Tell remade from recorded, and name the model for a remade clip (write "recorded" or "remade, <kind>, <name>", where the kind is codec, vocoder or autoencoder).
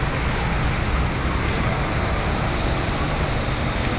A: recorded